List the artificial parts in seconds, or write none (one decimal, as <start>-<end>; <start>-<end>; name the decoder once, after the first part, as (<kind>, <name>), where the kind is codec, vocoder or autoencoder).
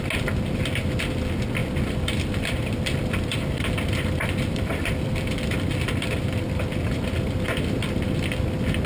1.6-6.5 (vocoder, BigVGAN v2)